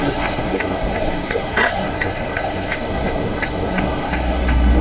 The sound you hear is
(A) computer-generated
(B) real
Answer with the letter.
A